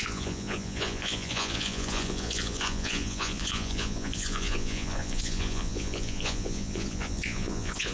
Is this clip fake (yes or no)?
yes